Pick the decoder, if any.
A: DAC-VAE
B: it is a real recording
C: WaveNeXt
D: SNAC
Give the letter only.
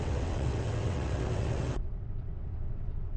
C